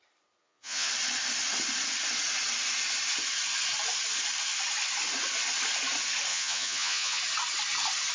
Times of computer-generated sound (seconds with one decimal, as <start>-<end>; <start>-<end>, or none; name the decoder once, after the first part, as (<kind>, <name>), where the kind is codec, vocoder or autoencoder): 0.4-0.9 (vocoder, Vocos); 6.3-7.2